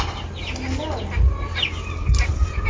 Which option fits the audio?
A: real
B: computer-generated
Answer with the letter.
A